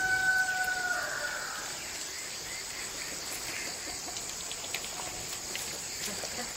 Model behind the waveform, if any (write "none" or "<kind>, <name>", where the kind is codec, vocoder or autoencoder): none